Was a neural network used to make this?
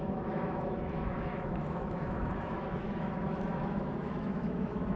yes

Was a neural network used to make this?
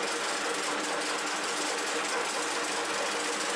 no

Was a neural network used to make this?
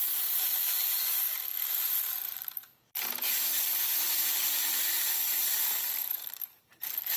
yes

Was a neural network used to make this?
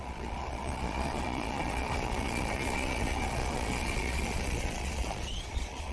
yes